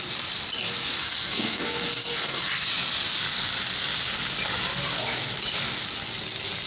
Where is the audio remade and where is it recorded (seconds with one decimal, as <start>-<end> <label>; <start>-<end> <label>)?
0.0-1.0 recorded; 1.0-2.5 remade; 2.5-6.7 recorded